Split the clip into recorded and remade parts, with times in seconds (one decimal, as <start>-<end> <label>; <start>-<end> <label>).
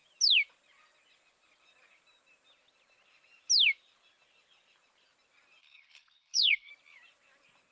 0.0-5.6 recorded; 5.6-6.7 remade; 6.7-7.7 recorded